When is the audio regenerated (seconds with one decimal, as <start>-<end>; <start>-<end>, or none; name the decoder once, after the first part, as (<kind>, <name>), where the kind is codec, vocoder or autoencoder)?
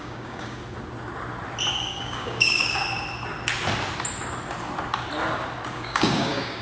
0.0-0.6 (codec, DAC); 1.7-2.8; 5.7-6.6